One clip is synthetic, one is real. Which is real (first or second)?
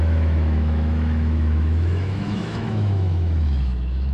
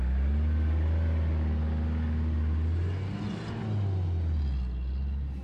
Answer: second